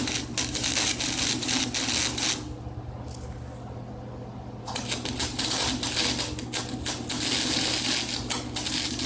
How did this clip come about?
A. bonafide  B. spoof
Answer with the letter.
A